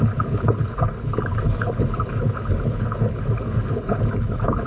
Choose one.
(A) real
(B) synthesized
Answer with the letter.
B